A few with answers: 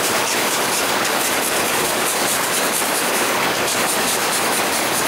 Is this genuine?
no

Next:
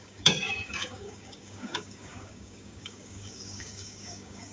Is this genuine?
no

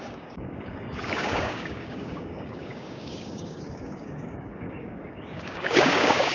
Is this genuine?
no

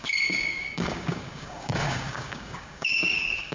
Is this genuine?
no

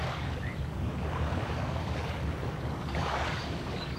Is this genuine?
no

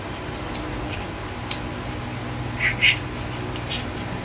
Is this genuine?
yes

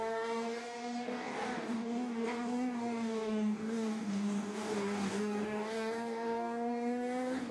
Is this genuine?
no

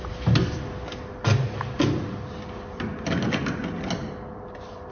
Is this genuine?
yes